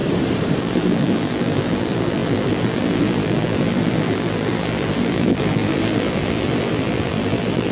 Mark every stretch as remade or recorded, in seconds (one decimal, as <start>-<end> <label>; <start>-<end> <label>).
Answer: 0.0-0.6 recorded; 0.6-7.7 remade